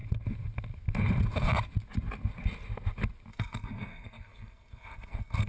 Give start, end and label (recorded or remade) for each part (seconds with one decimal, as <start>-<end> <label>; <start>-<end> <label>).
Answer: 0.0-3.3 recorded; 3.3-5.5 remade